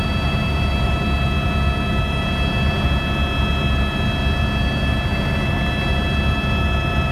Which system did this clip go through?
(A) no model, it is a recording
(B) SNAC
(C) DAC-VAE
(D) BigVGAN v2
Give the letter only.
A